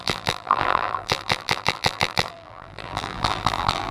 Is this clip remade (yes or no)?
yes